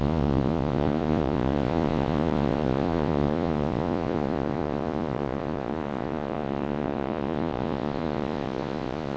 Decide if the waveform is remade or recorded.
remade